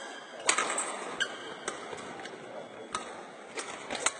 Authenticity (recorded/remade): recorded